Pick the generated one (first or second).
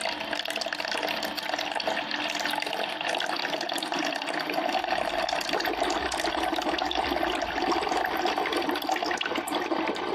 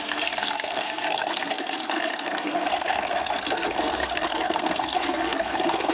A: second